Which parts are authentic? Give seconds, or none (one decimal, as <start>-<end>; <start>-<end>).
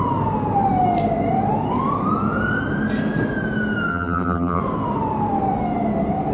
0.0-3.9; 4.6-6.3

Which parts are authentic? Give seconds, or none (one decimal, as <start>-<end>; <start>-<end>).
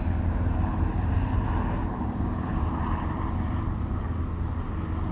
0.0-0.7; 1.4-1.8; 3.4-5.1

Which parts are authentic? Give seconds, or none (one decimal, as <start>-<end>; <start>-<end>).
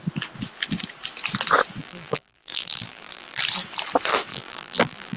0.0-1.8; 3.4-4.3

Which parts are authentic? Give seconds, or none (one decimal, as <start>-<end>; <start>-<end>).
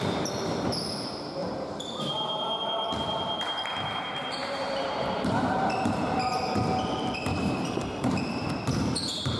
0.0-1.4; 2.0-4.4; 6.3-7.3; 8.3-9.4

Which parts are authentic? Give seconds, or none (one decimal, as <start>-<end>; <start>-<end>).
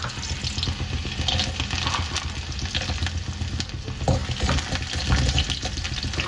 0.0-6.3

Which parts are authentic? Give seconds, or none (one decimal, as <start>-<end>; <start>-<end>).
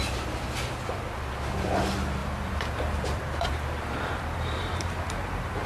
0.0-2.2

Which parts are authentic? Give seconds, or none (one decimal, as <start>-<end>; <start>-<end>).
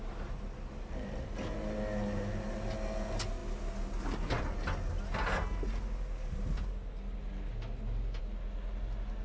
0.0-9.2